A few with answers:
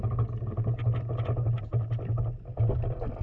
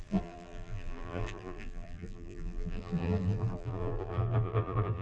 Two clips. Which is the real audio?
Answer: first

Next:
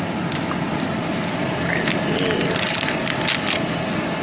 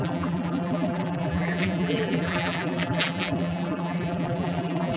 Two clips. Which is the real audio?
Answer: first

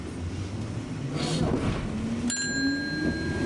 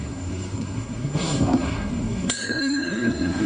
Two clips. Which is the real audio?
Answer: first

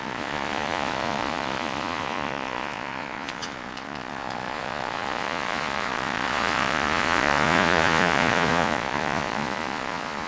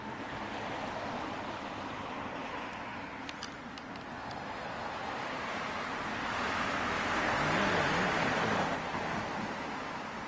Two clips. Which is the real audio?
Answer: second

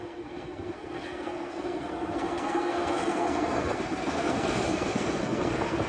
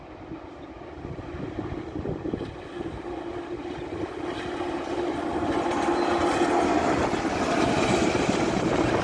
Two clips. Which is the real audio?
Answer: second